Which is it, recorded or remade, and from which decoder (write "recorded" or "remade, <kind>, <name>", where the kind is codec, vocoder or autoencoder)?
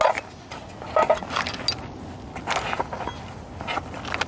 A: recorded